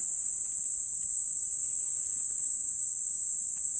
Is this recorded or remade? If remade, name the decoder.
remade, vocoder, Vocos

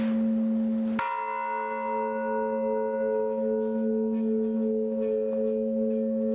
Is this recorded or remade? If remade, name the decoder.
recorded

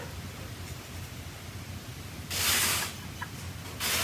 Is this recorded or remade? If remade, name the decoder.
recorded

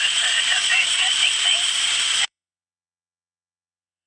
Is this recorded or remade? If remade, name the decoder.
remade, vocoder, Vocos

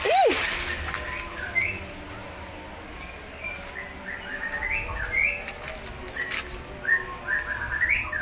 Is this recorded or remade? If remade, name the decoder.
recorded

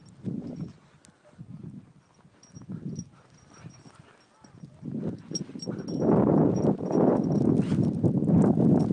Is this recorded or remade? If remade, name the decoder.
recorded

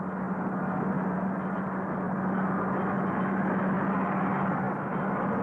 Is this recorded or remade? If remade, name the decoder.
recorded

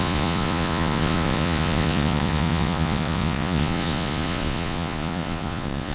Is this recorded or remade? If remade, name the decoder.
remade, vocoder, Vocos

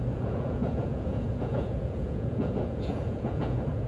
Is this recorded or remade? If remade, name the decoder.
remade, vocoder, Vocos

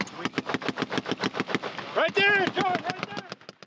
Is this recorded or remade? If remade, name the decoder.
recorded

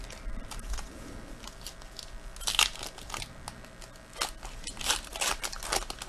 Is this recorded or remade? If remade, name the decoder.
recorded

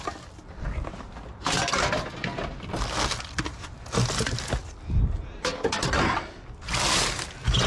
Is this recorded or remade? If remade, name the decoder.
recorded